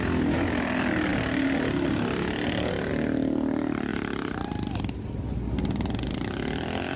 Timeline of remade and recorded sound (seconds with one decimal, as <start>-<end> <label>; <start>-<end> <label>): 0.0-7.0 recorded